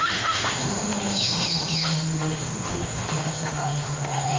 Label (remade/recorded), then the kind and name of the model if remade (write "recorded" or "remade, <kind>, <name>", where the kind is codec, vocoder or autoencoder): remade, autoencoder, DAC-VAE